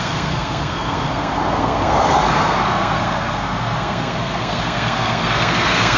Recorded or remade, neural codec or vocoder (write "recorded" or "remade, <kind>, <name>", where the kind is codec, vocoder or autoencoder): remade, codec, SNAC